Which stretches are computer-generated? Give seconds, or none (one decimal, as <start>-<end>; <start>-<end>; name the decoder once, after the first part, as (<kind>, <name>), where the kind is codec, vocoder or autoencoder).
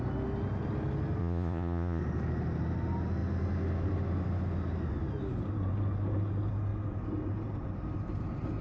1.2-2.0 (vocoder, Vocos)